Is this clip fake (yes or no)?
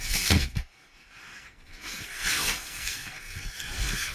yes